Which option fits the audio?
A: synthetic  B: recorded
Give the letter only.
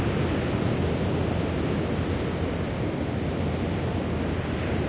B